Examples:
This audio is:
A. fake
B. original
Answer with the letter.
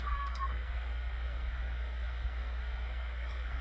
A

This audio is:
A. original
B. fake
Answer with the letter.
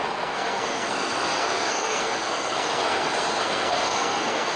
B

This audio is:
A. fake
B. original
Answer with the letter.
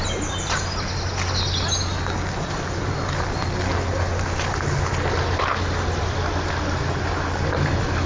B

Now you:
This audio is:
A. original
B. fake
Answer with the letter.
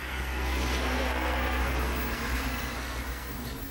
B